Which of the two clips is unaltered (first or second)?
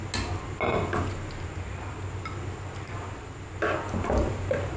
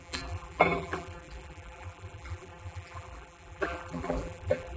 first